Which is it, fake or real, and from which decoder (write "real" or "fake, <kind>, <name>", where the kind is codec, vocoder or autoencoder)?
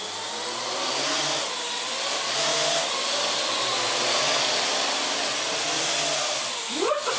real